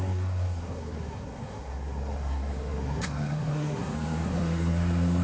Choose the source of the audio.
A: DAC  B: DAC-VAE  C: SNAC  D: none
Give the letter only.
C